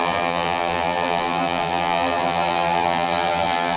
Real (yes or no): no